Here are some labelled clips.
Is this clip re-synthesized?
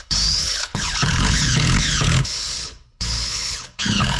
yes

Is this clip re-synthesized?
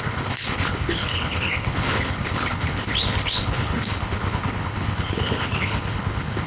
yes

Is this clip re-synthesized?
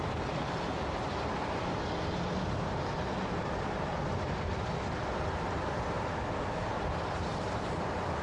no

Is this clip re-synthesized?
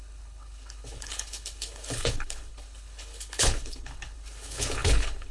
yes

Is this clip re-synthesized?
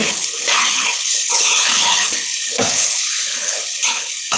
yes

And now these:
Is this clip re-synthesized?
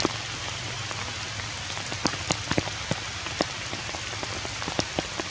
no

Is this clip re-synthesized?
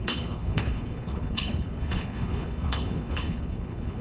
yes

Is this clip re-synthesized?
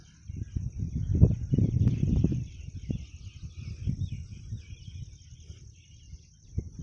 no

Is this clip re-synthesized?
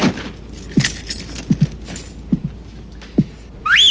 no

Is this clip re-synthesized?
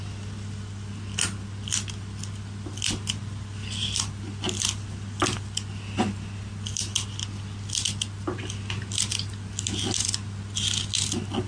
no